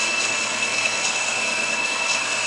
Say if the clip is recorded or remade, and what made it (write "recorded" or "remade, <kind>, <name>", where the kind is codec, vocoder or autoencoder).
remade, codec, SNAC